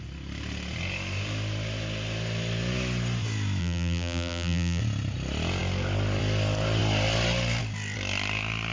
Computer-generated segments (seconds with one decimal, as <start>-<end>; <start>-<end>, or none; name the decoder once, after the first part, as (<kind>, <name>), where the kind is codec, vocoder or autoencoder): 3.6-4.8 (vocoder, BigVGAN v2)